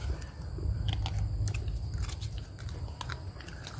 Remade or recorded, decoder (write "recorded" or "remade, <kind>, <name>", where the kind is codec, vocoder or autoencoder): recorded